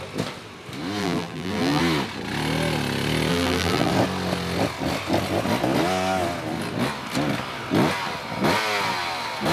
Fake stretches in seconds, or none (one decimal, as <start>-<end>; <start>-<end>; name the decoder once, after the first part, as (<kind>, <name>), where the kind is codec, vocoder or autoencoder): 1.0-1.8 (vocoder, BigVGAN v2); 3.3-3.9